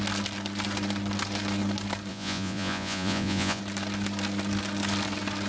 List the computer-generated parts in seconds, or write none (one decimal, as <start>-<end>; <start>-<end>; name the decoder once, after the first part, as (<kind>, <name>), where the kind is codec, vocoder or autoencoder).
2.1-3.6 (vocoder, Vocos)